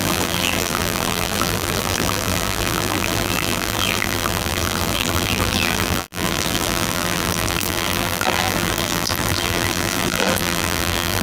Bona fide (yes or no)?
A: no